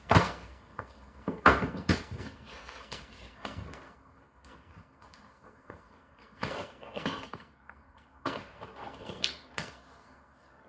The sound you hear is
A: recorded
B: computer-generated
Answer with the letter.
B